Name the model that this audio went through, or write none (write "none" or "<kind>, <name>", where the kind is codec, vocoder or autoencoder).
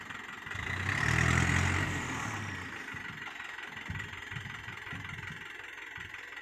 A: none